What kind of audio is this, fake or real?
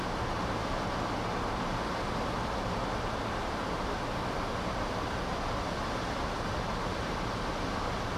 real